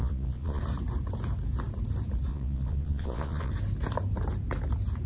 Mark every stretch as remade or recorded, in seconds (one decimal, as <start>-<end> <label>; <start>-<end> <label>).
0.0-0.6 remade; 0.6-2.3 recorded; 2.3-3.5 remade; 3.5-5.1 recorded